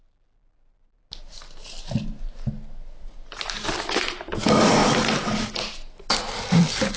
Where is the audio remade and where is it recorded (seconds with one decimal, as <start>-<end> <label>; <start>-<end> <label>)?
0.0-7.0 recorded